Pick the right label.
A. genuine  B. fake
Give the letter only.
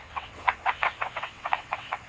B